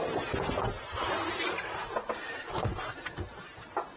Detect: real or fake fake